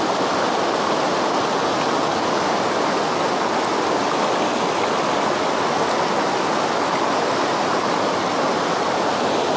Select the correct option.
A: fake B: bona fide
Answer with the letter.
B